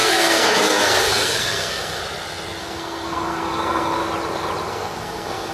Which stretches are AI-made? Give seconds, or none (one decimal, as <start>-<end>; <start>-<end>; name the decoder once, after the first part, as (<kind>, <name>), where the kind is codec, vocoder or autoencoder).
0.0-2.0 (codec, SNAC); 2.6-4.0; 4.7-5.5